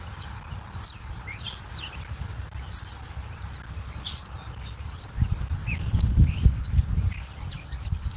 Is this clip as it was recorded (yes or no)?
yes